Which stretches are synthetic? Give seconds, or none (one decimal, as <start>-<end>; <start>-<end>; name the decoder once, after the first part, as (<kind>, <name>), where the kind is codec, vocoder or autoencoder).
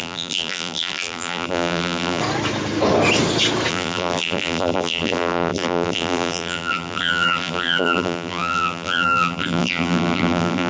0.0-2.2 (vocoder, BigVGAN v2); 3.7-10.7